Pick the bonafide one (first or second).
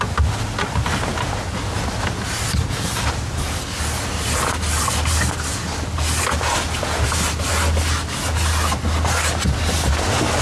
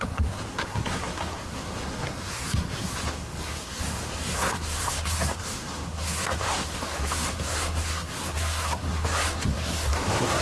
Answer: first